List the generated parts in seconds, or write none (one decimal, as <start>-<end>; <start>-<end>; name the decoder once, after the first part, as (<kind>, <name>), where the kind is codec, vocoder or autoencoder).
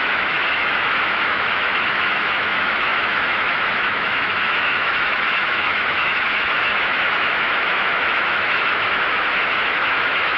0.0-10.4 (autoencoder, DAC-VAE)